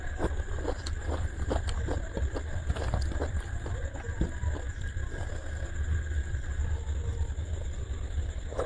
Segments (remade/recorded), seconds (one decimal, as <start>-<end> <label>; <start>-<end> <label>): 0.0-4.7 remade; 4.7-7.8 recorded; 7.8-8.7 remade